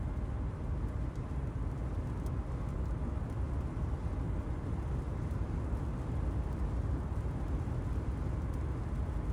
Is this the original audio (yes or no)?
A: yes